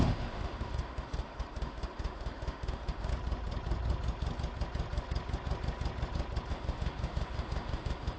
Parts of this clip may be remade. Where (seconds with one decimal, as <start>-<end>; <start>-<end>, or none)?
0.0-3.1; 6.5-8.2